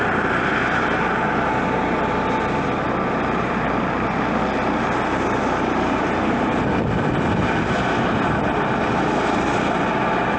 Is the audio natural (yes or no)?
yes